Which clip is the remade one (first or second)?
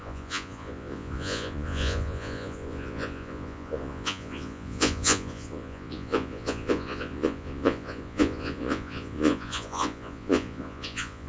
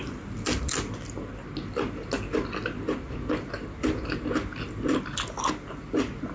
first